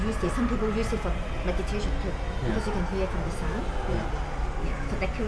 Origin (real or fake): real